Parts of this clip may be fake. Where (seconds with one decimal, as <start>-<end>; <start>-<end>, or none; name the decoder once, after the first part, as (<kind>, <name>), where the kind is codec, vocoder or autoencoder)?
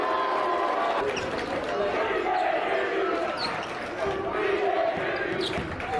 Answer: none